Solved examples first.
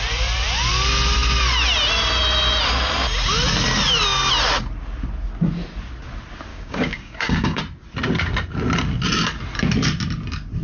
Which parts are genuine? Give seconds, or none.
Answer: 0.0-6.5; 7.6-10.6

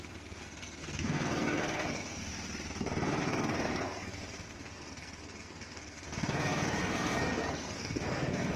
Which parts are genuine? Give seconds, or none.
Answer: 2.3-3.2

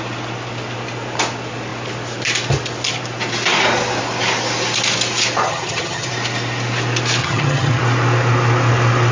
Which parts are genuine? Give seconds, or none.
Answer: 0.0-5.4; 6.1-7.2; 7.8-9.1